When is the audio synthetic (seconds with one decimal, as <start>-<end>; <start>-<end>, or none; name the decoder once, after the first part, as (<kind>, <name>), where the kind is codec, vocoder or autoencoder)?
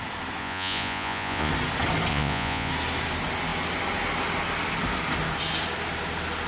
0.4-1.5 (vocoder, Vocos); 2.1-2.7